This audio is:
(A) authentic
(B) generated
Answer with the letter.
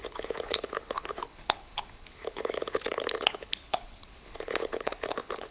B